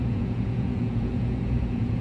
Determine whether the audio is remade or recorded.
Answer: remade